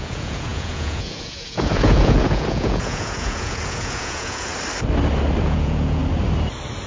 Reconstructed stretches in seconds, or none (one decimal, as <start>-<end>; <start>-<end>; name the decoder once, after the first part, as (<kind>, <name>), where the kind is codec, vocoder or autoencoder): 0.0-4.5 (vocoder, Vocos); 5.4-6.0